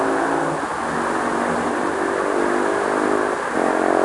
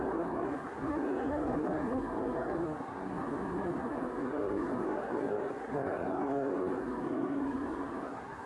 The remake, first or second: second